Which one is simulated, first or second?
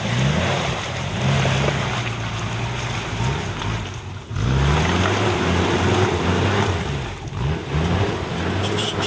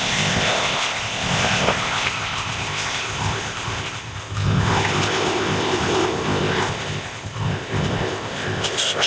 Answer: second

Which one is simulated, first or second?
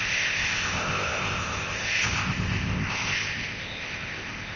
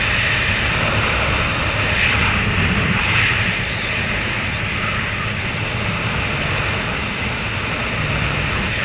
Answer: first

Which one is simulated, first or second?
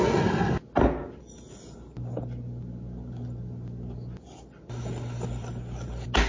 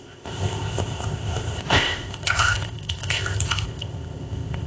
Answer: second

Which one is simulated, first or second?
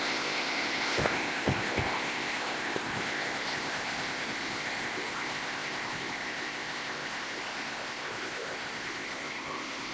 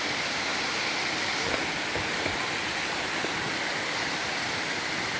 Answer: first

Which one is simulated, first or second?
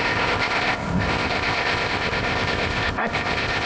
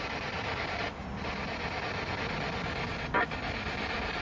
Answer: first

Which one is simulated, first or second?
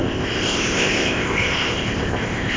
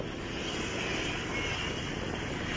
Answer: first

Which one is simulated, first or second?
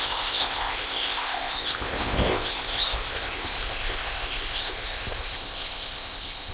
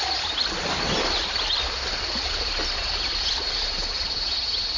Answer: first